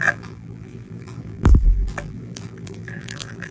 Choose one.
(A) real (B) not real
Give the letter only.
B